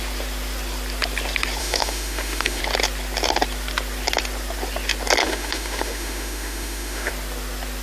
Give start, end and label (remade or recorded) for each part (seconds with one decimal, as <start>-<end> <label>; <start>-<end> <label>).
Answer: 0.0-1.6 recorded; 1.6-2.6 remade; 2.6-5.2 recorded; 5.2-7.1 remade; 7.1-7.8 recorded